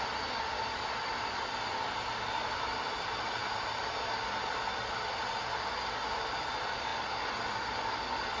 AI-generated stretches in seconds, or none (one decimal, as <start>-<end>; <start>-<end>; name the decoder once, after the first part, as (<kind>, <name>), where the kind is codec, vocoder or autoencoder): none